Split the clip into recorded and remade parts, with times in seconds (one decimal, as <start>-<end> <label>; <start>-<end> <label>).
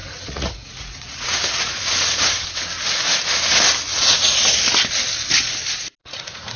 0.0-1.8 remade; 1.8-3.9 recorded; 3.9-4.6 remade; 4.6-6.0 recorded; 6.0-6.6 remade